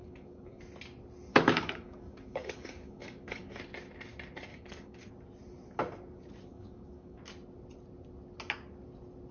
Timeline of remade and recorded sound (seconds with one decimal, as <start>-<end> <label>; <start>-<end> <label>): 0.0-0.6 remade; 0.6-1.3 recorded; 1.3-3.6 remade; 3.6-4.5 recorded; 4.5-5.1 remade; 5.1-6.5 recorded; 6.5-7.2 remade; 7.2-9.3 recorded